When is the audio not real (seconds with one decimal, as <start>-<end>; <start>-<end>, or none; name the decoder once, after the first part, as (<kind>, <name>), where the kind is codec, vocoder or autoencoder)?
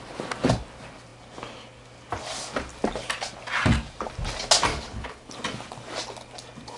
4.7-5.3 (codec, HILCodec)